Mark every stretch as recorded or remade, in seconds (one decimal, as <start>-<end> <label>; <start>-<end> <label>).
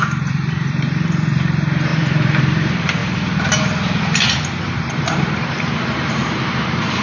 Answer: 0.0-7.0 remade